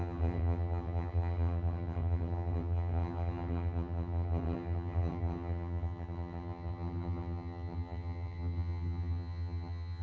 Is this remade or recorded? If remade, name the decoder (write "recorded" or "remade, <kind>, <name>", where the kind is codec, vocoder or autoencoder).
remade, vocoder, HiFi-GAN